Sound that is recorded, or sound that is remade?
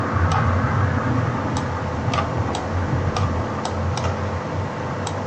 recorded